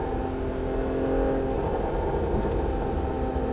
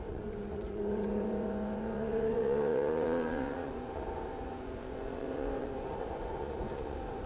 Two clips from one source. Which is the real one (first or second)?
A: first